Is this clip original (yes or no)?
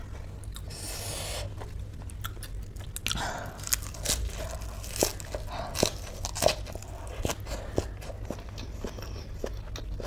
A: yes